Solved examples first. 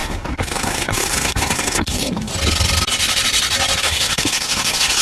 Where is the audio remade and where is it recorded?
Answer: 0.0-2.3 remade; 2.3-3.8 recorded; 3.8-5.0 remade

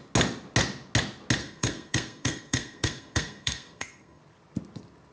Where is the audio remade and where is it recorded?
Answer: 0.0-1.4 recorded; 1.4-4.2 remade; 4.2-5.1 recorded

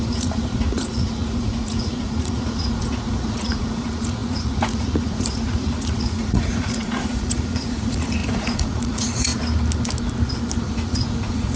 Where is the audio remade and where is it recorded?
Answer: 0.0-9.3 remade; 9.3-10.6 recorded; 10.6-11.6 remade

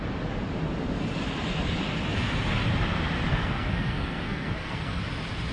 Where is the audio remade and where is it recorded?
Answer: 0.0-3.3 recorded; 3.3-5.0 remade; 5.0-5.5 recorded